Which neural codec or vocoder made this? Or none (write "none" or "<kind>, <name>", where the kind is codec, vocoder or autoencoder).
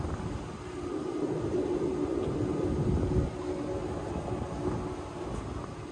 none